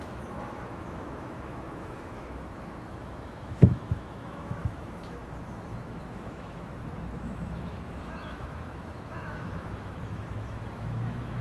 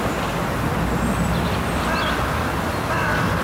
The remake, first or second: first